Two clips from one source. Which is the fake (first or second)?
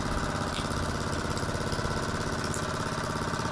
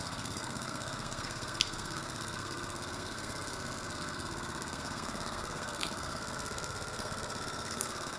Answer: second